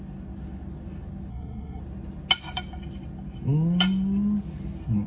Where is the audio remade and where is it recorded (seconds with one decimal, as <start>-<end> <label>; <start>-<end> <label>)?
0.0-1.3 recorded; 1.3-1.8 remade; 1.8-5.1 recorded